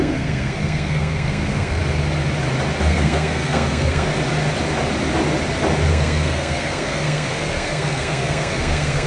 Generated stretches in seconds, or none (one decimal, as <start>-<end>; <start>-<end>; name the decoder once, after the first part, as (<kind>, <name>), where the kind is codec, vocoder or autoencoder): 0.0-1.8 (codec, SNAC); 2.8-4.1; 5.9-9.1